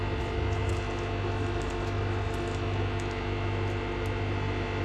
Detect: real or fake real